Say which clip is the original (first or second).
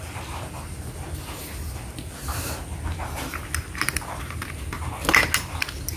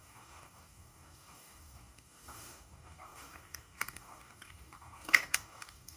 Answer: first